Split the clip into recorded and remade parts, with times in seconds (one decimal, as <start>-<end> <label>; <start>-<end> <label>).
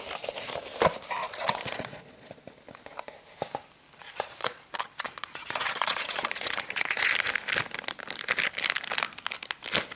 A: 0.0-1.2 recorded; 1.2-2.3 remade; 2.3-4.0 recorded; 4.0-7.1 remade; 7.1-10.0 recorded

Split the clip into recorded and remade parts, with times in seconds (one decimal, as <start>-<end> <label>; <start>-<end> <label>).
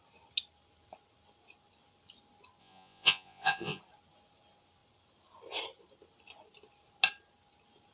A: 0.0-2.6 recorded; 2.6-3.8 remade; 3.8-7.9 recorded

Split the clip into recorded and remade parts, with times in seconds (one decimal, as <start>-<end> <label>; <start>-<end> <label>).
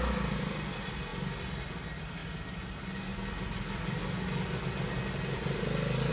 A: 0.0-6.1 recorded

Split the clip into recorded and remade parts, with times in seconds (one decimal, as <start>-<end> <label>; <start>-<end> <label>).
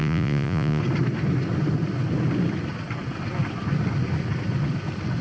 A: 0.0-0.8 remade; 0.8-5.2 recorded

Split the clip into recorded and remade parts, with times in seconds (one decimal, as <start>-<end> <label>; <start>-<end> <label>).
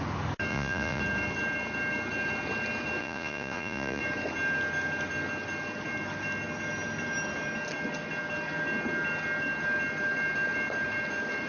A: 0.0-0.5 recorded; 0.5-1.0 remade; 1.0-3.0 recorded; 3.0-4.0 remade; 4.0-11.5 recorded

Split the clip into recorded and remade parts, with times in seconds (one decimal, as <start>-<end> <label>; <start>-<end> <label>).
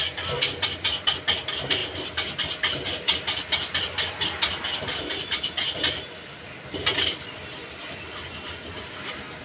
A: 0.0-9.4 recorded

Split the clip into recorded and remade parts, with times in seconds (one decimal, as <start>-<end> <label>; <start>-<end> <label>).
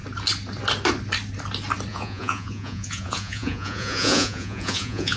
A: 0.0-1.9 recorded; 1.9-5.2 remade